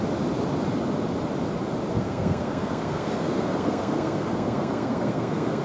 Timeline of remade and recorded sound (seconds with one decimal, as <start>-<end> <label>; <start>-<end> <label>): 0.0-1.9 recorded; 1.9-5.6 remade